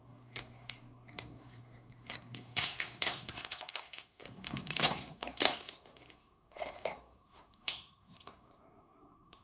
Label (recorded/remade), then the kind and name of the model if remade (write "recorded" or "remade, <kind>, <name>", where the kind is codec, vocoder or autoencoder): remade, codec, SNAC